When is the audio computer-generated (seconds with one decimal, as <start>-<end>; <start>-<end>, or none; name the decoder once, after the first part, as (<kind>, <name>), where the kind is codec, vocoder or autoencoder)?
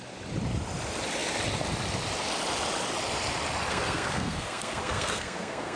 3.7-5.8 (codec, SNAC)